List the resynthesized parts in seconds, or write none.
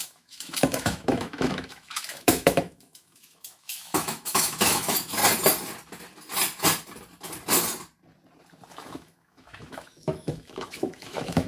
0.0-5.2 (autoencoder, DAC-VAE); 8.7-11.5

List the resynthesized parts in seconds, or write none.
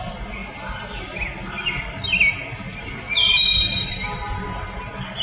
none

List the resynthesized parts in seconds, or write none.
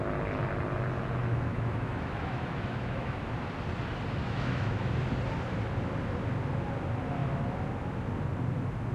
1.2-3.3 (autoencoder, DAC-VAE); 4.2-5.0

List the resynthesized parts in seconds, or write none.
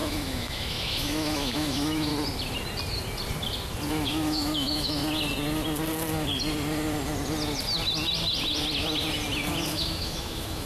0.0-2.1 (autoencoder, DAC-VAE); 3.9-5.0; 9.7-10.7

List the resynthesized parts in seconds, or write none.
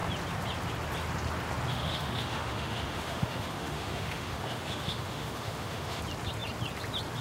1.7-6.0 (autoencoder, DAC-VAE)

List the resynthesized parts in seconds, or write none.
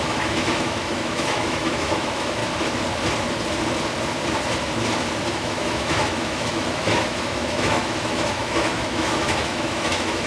0.0-2.4 (autoencoder, DAC-VAE); 5.3-10.3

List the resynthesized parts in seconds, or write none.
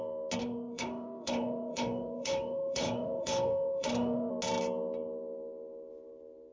0.4-4.3 (autoencoder, DAC-VAE)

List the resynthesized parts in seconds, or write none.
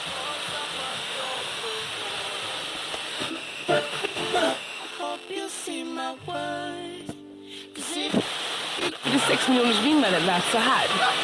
0.9-1.9 (autoencoder, DAC-VAE); 3.1-4.9